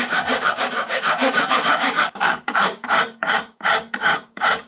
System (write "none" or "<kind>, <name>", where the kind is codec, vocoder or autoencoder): codec, DAC